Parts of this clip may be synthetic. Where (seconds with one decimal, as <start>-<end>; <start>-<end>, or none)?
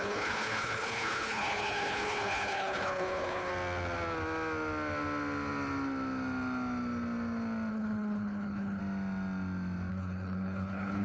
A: 0.0-3.5; 7.7-8.8; 9.9-11.0